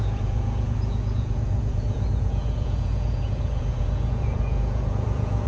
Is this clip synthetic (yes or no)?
yes